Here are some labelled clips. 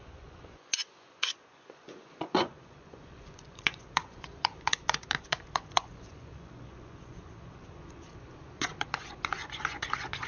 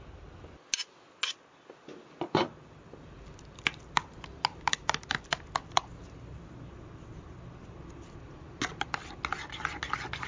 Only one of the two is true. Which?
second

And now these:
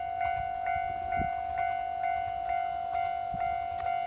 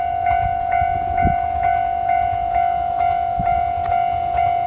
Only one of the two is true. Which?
first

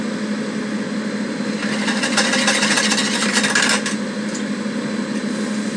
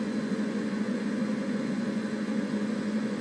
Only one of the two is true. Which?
first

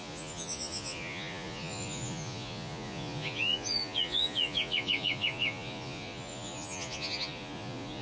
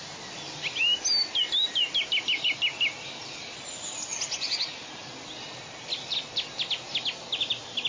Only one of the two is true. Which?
second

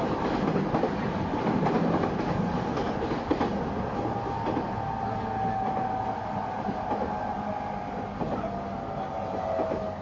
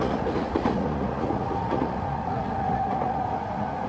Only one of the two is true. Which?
first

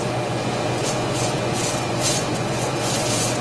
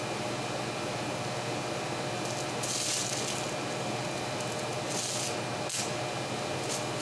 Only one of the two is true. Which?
second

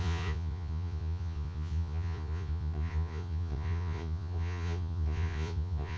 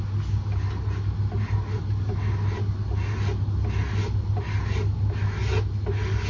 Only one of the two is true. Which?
second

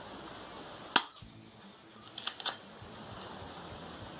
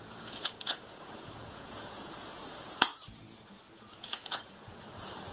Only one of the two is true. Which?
first